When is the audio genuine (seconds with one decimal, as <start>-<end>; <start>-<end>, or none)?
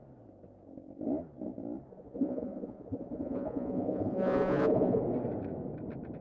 0.0-1.9; 5.0-6.2